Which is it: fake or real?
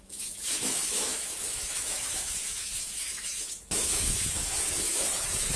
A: fake